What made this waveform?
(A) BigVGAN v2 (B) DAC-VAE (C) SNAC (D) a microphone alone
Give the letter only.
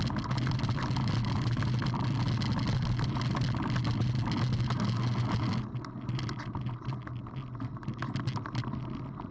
D